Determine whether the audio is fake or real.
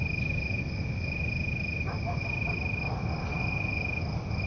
real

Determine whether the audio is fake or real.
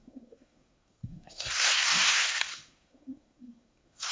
fake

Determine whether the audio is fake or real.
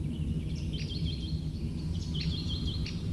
real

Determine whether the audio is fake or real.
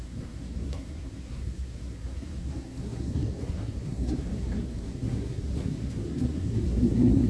fake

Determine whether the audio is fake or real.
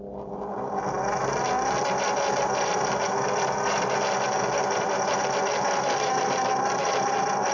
real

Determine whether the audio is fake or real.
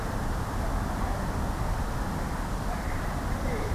real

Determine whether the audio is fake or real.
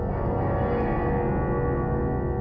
real